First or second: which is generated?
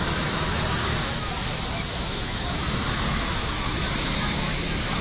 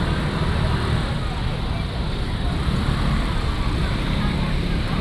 first